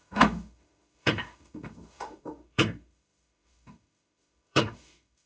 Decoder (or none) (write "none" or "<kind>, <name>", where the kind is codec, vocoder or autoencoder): autoencoder, DAC-VAE